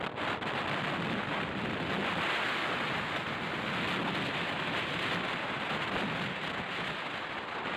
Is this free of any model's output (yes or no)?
yes